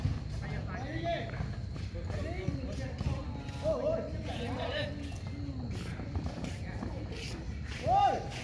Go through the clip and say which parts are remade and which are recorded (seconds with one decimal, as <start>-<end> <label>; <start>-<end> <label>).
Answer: 0.0-8.4 recorded